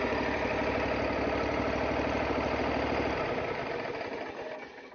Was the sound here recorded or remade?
recorded